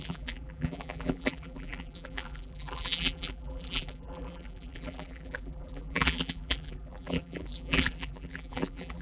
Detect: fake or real fake